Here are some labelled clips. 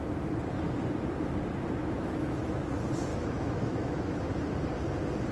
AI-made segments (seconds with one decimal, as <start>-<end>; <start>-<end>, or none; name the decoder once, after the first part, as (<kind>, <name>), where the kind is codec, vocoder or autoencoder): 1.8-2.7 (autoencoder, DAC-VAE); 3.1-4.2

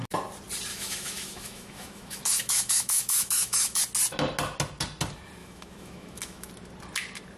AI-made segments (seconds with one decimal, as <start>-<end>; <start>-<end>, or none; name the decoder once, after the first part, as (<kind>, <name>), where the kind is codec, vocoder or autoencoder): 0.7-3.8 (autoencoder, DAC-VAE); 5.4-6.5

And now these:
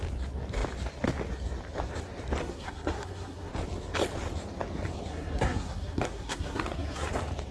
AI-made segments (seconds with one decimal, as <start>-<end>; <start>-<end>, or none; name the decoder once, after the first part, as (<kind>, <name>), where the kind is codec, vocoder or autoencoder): 2.4-3.5 (codec, SNAC); 5.1-7.1

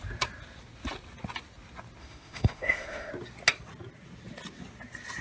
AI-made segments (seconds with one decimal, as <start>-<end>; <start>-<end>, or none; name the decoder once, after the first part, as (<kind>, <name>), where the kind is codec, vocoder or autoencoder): 2.0-3.1 (autoencoder, DAC-VAE)

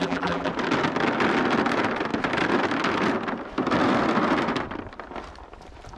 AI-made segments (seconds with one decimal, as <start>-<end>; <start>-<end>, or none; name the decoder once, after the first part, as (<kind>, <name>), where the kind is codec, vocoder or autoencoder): 0.0-0.5 (vocoder, BigVGAN v2)